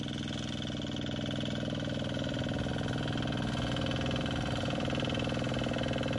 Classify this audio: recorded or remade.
recorded